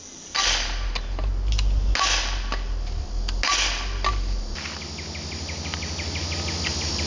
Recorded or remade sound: recorded